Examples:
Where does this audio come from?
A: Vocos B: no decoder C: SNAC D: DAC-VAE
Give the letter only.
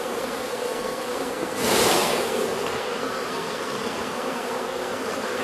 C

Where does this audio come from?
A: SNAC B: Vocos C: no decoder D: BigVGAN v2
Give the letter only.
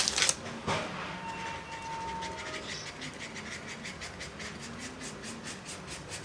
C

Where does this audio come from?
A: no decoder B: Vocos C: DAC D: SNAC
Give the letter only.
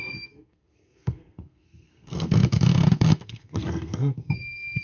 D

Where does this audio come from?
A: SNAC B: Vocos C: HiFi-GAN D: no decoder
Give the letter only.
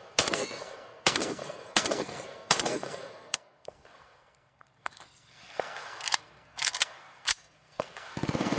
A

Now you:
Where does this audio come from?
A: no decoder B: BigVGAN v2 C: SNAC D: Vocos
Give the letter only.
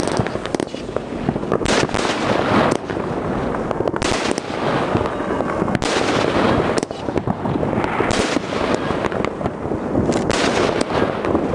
A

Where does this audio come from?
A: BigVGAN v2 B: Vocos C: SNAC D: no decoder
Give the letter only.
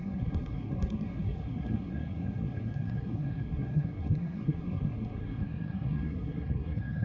C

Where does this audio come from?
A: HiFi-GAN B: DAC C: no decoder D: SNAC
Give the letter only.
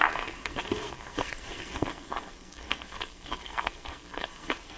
D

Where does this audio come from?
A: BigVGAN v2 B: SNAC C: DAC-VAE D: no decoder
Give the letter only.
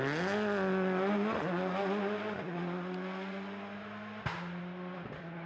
D